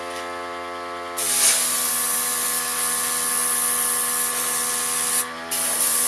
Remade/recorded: recorded